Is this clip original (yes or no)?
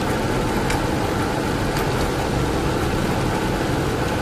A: yes